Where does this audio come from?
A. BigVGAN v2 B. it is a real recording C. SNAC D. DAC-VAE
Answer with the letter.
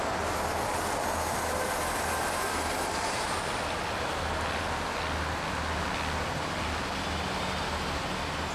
B